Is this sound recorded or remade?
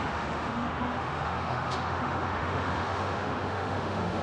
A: remade